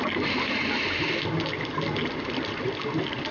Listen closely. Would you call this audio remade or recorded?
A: recorded